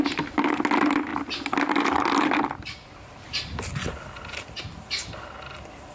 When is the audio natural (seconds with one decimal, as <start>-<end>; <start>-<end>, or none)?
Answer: 0.0-5.9